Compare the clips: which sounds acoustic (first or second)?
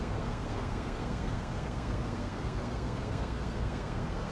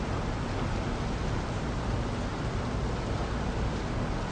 second